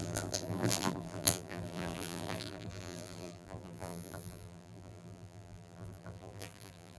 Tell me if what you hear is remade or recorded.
remade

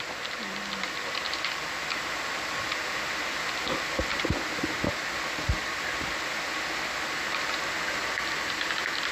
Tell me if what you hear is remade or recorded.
recorded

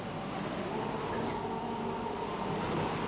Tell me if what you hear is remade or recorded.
recorded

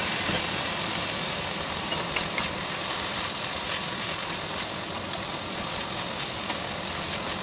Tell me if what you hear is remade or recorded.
remade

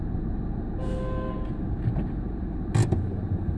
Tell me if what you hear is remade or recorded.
recorded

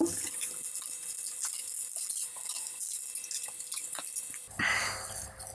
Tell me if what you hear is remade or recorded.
recorded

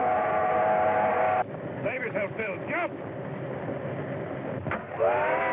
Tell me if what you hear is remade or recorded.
recorded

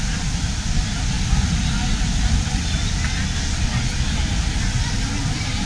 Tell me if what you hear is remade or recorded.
recorded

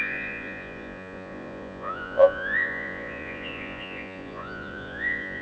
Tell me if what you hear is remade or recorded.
remade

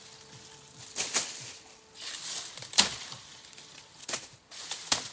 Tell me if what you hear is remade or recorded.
recorded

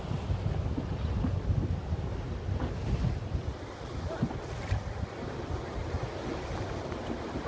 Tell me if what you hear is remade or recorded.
recorded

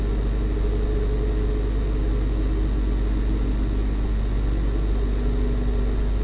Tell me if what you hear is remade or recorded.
recorded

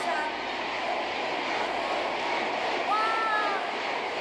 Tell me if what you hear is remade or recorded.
recorded